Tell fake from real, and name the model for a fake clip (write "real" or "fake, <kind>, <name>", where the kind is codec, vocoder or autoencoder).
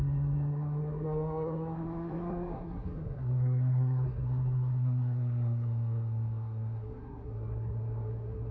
fake, codec, SNAC